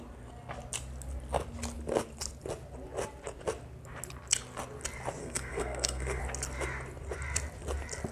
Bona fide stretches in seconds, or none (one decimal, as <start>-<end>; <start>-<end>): 0.0-5.2; 6.2-8.1